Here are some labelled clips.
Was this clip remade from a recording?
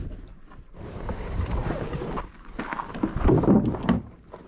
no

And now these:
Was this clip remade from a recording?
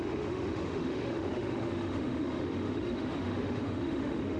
yes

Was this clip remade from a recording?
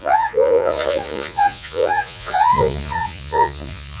yes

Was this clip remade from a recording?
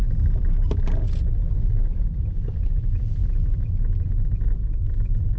no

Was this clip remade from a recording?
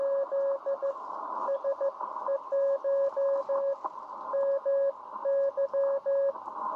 no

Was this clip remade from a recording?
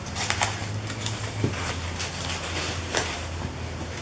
no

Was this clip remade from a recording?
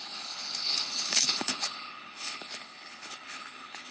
yes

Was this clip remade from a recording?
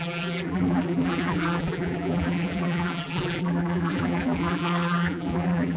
yes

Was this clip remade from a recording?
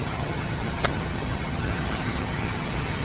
yes